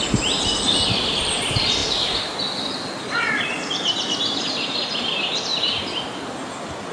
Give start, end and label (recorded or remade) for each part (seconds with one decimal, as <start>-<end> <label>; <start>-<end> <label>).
0.0-6.9 recorded